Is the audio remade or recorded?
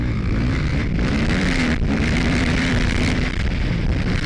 remade